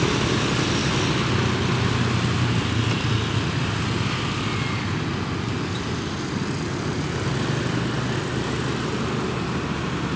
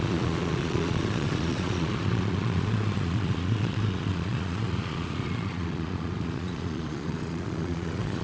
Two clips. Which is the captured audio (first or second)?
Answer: first